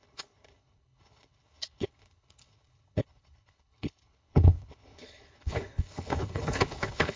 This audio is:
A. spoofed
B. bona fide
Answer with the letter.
A